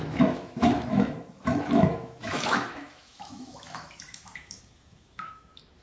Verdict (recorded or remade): remade